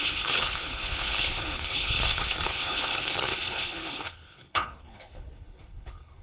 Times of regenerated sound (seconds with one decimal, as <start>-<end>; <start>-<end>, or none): 0.0-6.2